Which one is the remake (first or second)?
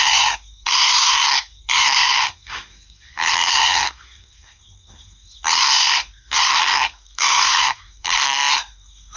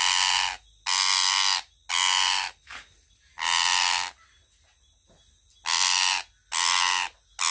first